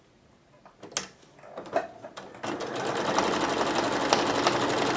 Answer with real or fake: real